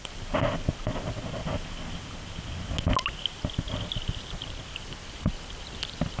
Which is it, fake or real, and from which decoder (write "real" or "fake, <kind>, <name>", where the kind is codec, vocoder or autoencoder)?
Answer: real